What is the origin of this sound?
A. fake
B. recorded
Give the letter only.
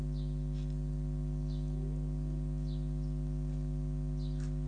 B